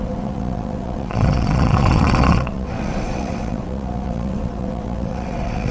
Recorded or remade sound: remade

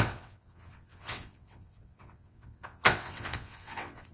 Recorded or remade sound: remade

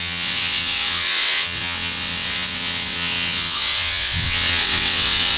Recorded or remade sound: remade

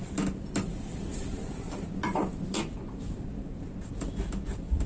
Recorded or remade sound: recorded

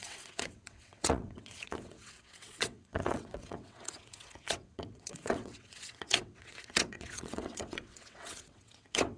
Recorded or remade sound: remade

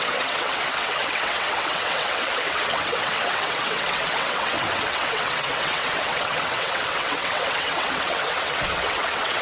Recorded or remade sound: remade